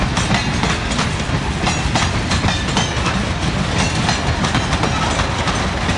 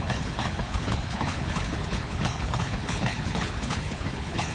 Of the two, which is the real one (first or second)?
first